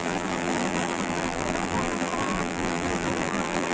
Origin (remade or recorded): remade